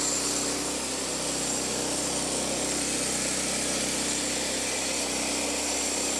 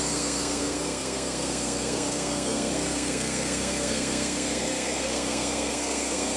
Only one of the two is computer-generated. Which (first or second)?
second